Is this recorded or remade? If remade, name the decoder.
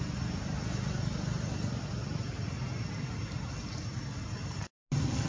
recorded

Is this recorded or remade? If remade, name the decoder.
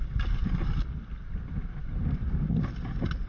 recorded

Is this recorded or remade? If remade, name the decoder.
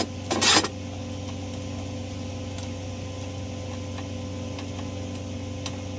recorded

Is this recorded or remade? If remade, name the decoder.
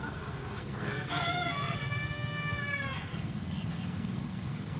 remade, codec, SNAC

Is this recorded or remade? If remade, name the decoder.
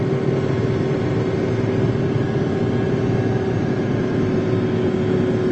recorded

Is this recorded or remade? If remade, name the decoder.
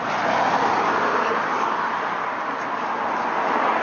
recorded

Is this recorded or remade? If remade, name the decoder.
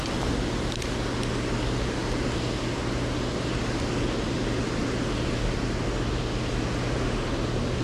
recorded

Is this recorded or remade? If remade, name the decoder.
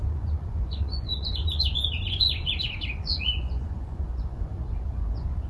remade, vocoder, Vocos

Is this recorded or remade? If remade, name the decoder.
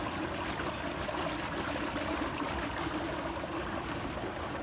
recorded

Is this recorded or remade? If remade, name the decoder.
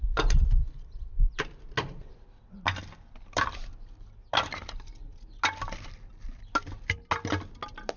recorded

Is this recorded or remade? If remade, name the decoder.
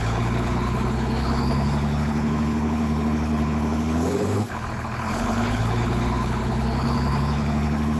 remade, codec, HILCodec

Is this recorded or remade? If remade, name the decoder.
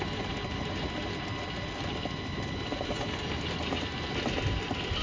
recorded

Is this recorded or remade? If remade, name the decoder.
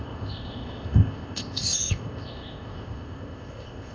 remade, codec, ZipCodec